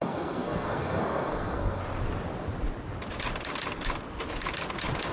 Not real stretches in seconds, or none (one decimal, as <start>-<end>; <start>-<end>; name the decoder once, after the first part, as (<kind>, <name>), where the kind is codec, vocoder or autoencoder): 0.0-1.8 (codec, SNAC)